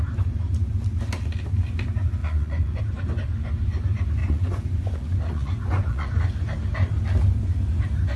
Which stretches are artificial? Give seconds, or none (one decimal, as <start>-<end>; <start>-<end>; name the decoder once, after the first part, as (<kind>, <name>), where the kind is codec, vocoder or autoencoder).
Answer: 2.2-2.8 (vocoder, Vocos); 4.2-6.2